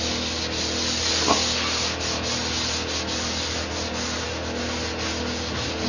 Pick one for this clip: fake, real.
real